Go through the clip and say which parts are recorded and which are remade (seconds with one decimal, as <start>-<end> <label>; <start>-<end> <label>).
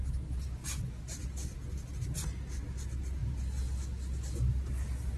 0.0-5.2 recorded